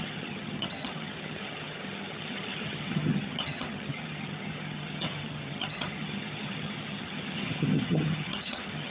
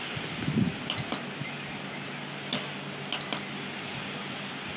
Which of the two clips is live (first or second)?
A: second